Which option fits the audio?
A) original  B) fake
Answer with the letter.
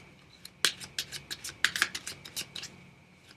A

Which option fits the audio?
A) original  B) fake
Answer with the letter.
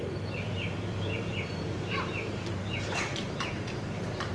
B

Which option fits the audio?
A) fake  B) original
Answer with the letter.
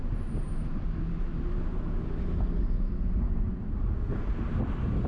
B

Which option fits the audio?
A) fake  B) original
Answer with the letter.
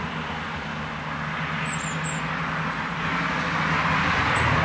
B